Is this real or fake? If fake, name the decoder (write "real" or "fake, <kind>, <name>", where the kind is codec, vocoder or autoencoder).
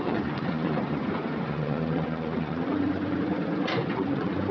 fake, vocoder, Vocos